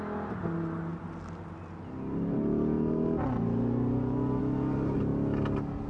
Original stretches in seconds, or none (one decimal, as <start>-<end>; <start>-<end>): 0.0-5.9